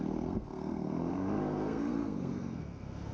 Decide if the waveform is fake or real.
fake